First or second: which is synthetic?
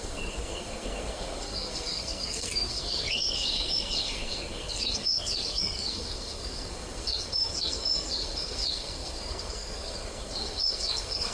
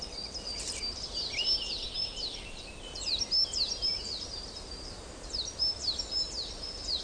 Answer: first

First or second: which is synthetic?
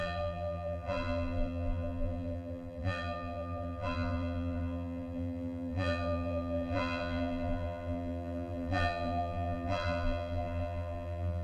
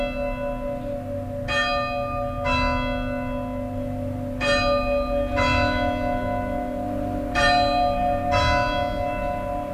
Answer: first